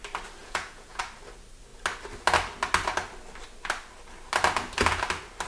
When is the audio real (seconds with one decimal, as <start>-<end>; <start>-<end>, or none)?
0.0-0.4; 1.0-5.5